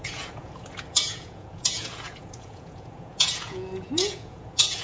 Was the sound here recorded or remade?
remade